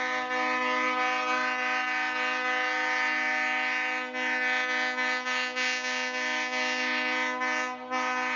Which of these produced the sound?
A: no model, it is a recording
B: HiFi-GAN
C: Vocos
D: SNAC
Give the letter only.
A